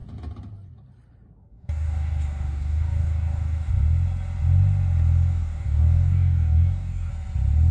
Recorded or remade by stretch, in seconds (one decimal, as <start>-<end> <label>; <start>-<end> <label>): 0.0-1.4 recorded; 1.4-3.7 remade; 3.7-5.3 recorded; 5.3-7.1 remade; 7.1-7.7 recorded